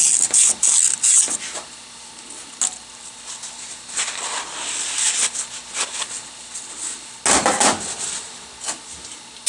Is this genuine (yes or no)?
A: yes